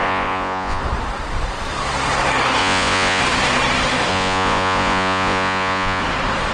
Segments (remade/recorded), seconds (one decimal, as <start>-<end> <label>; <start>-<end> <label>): 0.0-0.8 remade; 0.8-2.6 recorded; 2.6-3.2 remade; 3.2-4.1 recorded; 4.1-6.0 remade; 6.0-6.5 recorded